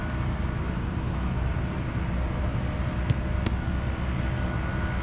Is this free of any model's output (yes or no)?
yes